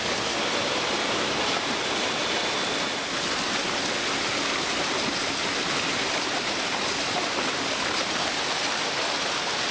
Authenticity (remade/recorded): recorded